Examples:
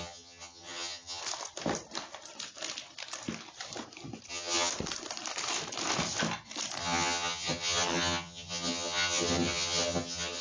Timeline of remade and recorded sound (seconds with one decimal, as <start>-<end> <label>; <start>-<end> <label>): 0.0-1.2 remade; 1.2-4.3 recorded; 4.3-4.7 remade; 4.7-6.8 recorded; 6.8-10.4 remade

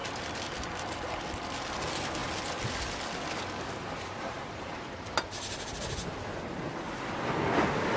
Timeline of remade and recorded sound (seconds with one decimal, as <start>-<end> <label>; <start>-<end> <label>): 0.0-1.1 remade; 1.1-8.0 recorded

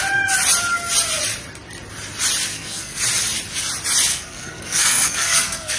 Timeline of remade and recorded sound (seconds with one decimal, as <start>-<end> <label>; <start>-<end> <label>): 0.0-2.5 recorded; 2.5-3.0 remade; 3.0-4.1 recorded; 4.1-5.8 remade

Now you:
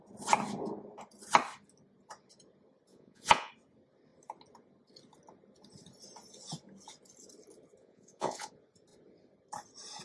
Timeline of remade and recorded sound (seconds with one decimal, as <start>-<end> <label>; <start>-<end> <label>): 0.0-2.9 recorded; 2.9-3.5 remade; 3.5-7.8 recorded; 7.8-8.5 remade; 8.5-10.0 recorded

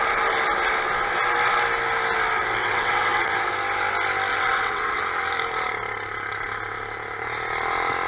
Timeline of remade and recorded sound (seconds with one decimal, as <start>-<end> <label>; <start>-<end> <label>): 0.0-2.6 recorded; 2.6-3.3 remade; 3.3-4.3 recorded; 4.3-5.0 remade; 5.0-8.1 recorded

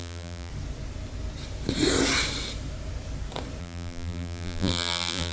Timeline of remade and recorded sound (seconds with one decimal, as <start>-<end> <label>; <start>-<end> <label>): 0.0-0.5 remade; 0.5-3.6 recorded; 3.6-5.3 remade